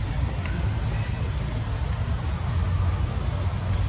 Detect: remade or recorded recorded